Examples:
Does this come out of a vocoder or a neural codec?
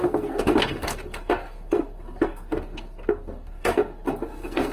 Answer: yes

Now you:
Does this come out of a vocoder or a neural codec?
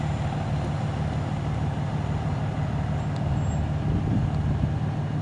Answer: no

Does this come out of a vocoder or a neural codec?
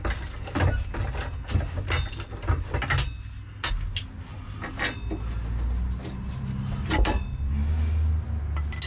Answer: no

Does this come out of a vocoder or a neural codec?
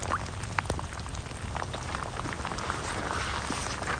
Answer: no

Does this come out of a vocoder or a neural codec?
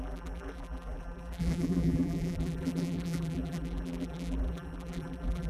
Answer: yes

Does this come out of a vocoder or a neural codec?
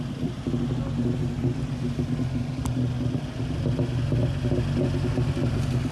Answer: no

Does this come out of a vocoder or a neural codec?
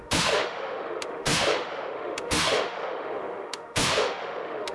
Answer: yes